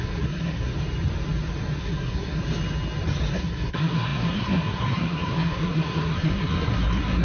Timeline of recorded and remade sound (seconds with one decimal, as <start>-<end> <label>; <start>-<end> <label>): 0.0-0.7 remade; 0.7-1.8 recorded; 1.8-2.4 remade; 2.4-3.3 recorded; 3.3-7.2 remade